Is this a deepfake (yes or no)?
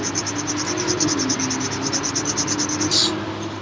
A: no